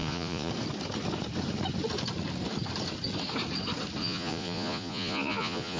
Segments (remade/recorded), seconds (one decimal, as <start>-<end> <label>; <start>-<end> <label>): 0.0-0.5 remade; 0.5-4.0 recorded; 4.0-5.8 remade